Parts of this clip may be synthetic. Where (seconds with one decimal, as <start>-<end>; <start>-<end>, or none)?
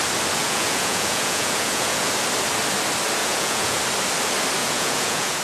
0.4-2.1; 3.2-3.8; 4.6-5.4